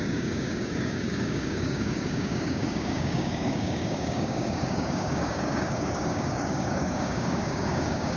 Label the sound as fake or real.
fake